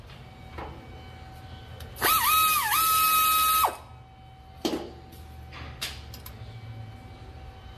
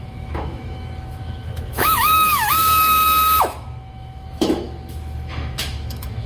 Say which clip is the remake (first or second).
second